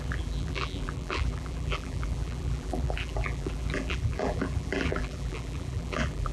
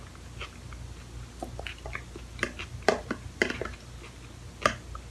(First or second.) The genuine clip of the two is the second